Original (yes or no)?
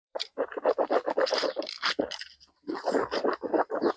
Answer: no